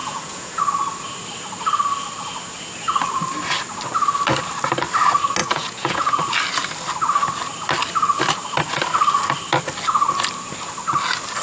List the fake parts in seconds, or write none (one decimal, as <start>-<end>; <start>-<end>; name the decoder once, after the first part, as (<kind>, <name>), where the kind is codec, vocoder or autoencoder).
0.0-0.6 (vocoder, Vocos); 5.4-6.2

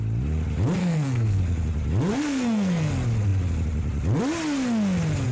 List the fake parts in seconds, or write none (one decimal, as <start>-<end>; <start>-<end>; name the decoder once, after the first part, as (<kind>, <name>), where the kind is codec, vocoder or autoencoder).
0.8-1.4 (codec, SNAC); 2.1-2.9

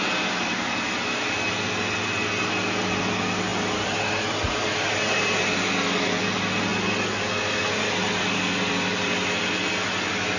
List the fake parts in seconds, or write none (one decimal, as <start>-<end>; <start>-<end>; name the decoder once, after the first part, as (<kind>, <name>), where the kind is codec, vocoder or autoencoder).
none

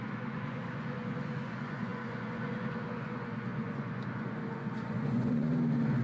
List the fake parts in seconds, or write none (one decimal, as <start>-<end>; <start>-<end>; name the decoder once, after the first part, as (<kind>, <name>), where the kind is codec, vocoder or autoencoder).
0.0-5.5 (vocoder, Vocos)

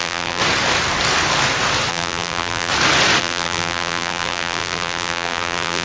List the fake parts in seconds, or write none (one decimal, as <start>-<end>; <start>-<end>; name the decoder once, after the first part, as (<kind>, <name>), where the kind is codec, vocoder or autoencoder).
0.0-0.4 (vocoder, BigVGAN v2); 1.9-2.7; 3.2-5.8

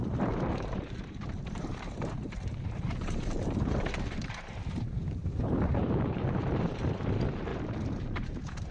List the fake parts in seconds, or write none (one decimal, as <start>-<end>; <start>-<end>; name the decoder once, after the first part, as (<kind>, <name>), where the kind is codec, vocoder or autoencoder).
0.0-8.7 (vocoder, BigVGAN v2)

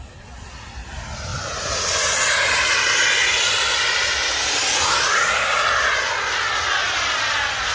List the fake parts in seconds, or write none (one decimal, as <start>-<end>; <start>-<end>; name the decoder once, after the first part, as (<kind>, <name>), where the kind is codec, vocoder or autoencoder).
1.3-1.8 (vocoder, BigVGAN v2)

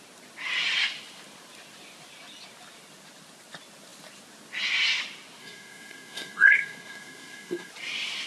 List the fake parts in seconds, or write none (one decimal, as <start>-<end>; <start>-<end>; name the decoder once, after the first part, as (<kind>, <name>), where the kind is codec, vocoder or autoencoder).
5.4-7.7 (codec, SNAC)